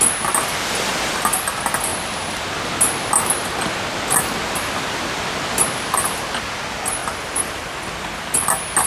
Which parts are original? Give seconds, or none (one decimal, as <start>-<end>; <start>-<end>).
0.0-7.0; 7.9-8.9